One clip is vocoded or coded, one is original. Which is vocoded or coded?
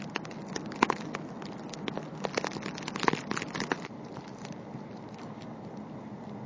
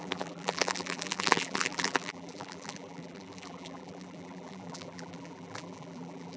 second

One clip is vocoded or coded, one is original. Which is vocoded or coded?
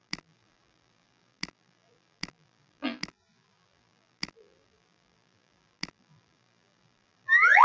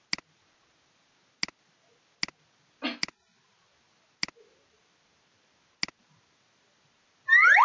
first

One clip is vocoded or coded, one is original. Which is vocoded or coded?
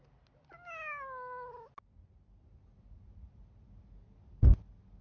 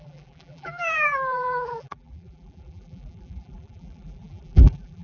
second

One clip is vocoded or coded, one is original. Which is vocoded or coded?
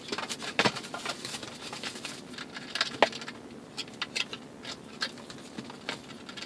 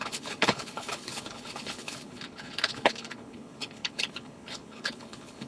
second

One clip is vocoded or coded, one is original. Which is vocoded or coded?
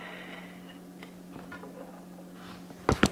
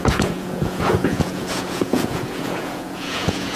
second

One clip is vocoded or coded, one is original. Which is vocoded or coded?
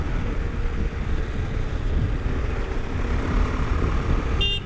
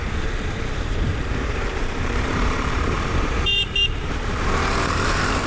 second